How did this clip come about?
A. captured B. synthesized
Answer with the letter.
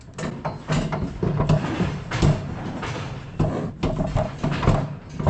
A